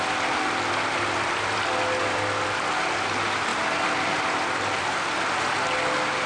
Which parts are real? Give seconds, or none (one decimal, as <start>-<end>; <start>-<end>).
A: 0.0-3.5; 4.8-6.3